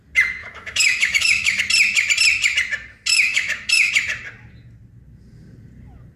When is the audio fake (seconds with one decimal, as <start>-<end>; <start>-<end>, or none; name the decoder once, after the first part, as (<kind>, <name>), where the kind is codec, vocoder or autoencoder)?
0.4-1.6 (autoencoder, DAC-VAE); 3.1-3.9